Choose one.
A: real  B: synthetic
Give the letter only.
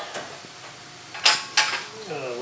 A